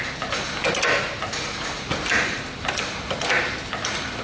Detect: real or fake real